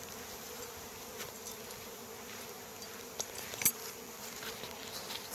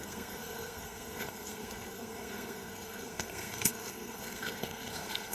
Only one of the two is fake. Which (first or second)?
second